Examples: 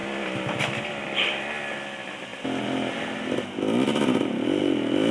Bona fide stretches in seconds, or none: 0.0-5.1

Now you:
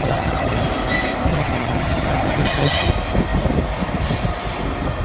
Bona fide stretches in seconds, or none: 0.6-1.3; 2.9-5.0

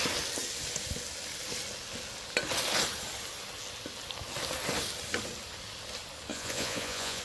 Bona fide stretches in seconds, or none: 0.0-6.3

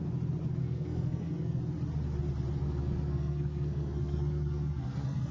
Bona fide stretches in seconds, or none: 0.0-0.6; 1.6-2.6

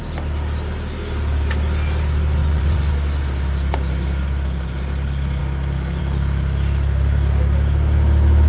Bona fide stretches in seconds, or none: 0.0-2.4; 2.9-8.5

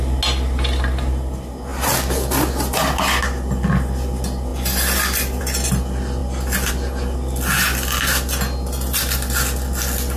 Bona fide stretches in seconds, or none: 0.0-10.2

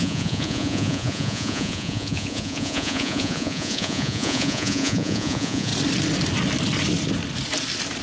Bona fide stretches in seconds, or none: 5.7-8.0